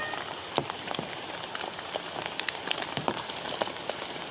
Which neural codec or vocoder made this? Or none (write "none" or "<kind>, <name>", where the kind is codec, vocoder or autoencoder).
none